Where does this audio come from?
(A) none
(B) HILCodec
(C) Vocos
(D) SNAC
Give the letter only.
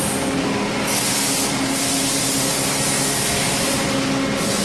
A